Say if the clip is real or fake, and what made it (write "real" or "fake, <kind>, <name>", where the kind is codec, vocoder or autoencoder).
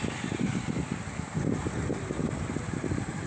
real